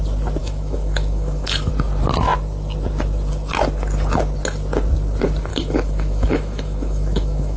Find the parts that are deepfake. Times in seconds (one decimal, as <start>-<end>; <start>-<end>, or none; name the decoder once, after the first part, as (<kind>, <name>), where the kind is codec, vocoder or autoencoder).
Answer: 0.4-1.7 (autoencoder, DAC-VAE); 5.5-7.6